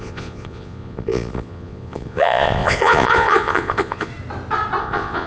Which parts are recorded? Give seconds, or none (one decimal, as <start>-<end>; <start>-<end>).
4.1-4.8